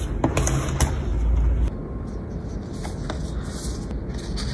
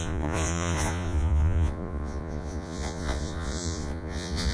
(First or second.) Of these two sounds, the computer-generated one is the second